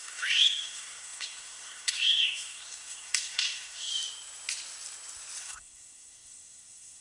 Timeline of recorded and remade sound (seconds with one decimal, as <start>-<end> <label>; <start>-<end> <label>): 0.0-3.9 remade; 3.9-5.4 recorded; 5.4-7.0 remade